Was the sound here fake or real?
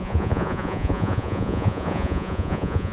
fake